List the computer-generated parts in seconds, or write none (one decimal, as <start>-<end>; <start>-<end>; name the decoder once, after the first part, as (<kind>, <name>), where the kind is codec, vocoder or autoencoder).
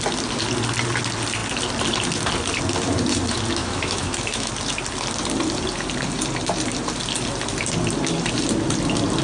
3.6-4.5 (autoencoder, DAC-VAE)